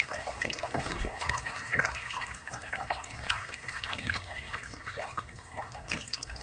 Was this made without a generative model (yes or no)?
no